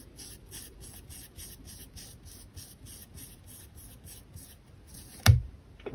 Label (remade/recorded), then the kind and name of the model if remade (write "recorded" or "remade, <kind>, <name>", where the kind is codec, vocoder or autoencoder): recorded